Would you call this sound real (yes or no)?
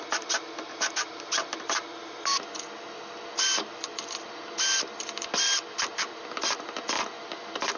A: yes